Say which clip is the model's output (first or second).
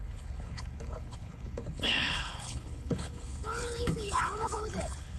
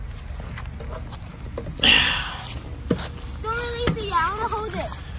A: first